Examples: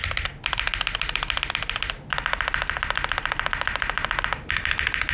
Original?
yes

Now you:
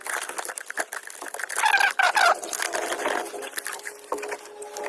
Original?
yes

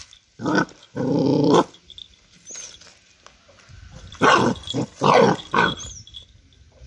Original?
yes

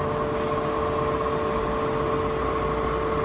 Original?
yes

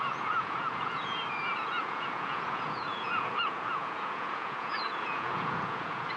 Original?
no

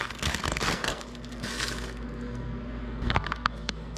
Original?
no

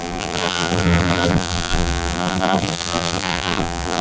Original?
no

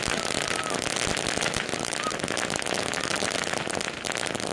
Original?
yes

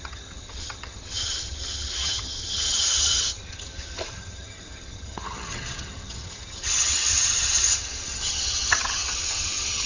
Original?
no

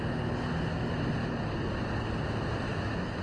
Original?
yes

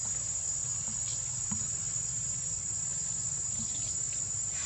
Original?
yes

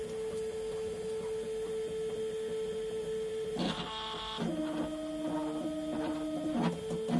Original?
yes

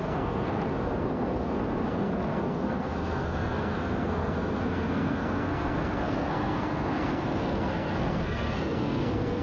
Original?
no